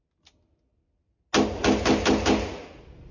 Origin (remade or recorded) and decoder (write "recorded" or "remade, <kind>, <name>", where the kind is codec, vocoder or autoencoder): recorded